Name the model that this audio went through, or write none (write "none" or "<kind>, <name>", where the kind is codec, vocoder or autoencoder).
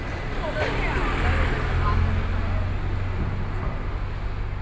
none